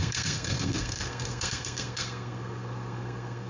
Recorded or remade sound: remade